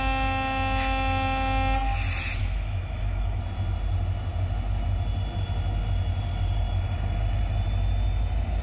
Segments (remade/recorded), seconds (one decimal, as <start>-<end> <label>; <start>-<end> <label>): 0.0-2.4 recorded; 2.4-3.4 remade; 3.4-8.6 recorded